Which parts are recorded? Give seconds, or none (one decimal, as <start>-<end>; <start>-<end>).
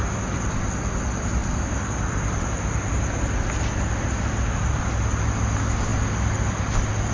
0.0-7.1